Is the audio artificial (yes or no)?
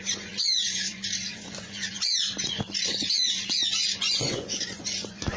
yes